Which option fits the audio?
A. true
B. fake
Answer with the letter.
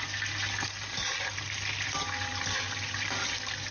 A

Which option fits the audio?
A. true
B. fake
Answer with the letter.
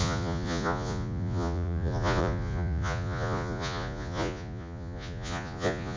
B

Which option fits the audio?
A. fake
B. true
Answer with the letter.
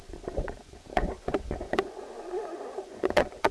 A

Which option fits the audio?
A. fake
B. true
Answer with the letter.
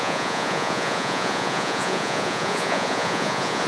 A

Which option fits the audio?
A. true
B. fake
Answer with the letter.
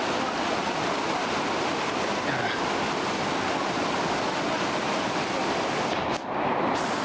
A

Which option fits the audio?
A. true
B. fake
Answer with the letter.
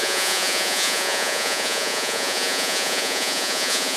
B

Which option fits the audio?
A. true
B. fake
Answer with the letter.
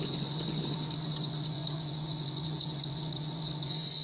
B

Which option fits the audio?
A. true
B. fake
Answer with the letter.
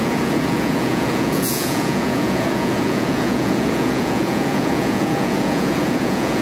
B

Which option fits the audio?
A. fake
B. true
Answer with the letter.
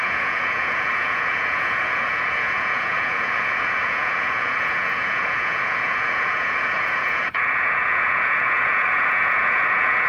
A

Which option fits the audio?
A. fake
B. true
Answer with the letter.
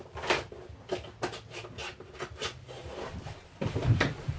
B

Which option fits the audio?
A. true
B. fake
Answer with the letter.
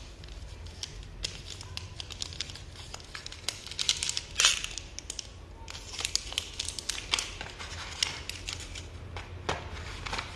A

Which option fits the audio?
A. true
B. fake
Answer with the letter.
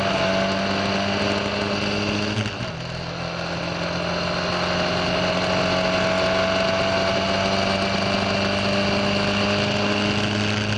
A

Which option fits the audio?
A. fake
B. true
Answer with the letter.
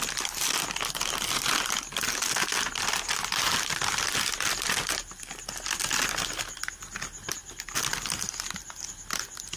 B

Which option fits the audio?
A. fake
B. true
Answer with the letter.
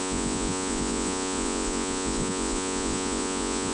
A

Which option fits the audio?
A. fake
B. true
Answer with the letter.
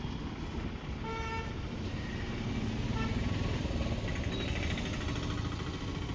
B